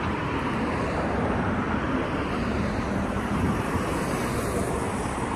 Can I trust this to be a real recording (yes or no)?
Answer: no